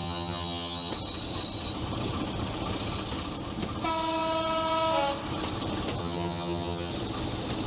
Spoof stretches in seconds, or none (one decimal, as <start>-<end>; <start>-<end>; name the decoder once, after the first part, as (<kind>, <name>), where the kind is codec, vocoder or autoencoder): 0.0-0.9 (vocoder, HiFi-GAN); 6.0-6.9